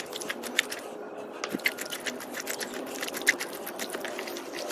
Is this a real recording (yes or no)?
yes